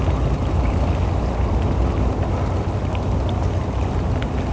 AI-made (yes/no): no